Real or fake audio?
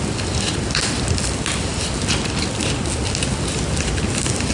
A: real